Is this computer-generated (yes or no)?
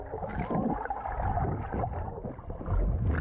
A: no